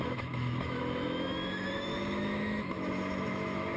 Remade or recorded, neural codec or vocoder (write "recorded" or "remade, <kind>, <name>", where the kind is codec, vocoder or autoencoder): remade, autoencoder, DAC-VAE